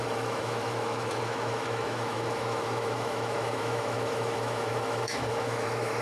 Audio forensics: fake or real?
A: fake